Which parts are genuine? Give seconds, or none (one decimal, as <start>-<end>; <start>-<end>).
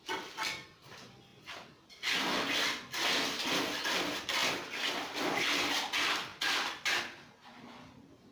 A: 0.0-8.3